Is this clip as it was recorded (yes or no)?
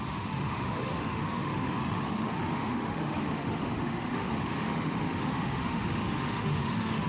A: no